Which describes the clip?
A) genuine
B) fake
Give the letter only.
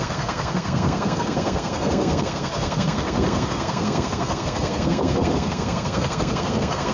B